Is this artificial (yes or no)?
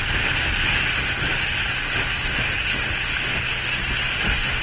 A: no